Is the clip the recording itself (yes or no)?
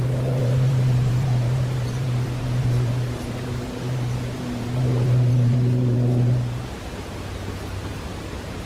no